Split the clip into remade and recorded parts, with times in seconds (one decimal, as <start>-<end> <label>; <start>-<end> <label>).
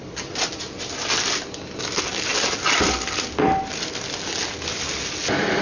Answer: 0.0-5.6 recorded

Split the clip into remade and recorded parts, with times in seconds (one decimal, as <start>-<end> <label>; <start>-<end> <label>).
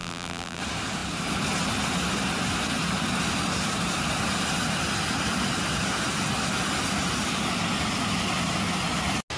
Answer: 0.0-0.6 remade; 0.6-9.4 recorded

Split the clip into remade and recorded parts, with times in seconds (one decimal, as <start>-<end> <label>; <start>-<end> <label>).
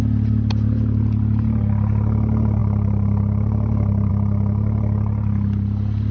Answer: 0.0-2.6 recorded; 2.6-4.1 remade; 4.1-6.1 recorded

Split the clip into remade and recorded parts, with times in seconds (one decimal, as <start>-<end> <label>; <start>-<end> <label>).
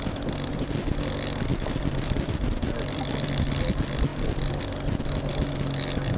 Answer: 0.0-1.5 recorded; 1.5-3.4 remade; 3.4-6.2 recorded